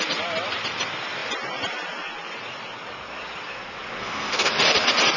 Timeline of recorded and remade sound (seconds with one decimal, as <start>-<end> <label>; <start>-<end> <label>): 0.0-4.0 recorded; 4.0-4.5 remade; 4.5-5.2 recorded